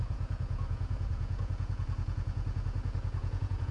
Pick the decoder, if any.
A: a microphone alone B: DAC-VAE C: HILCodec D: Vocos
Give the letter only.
D